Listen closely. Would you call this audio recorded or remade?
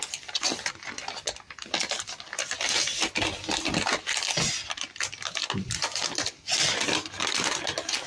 recorded